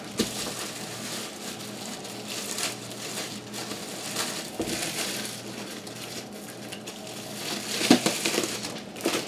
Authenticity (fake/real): fake